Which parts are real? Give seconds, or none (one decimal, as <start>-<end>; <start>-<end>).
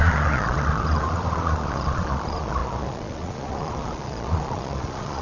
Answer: none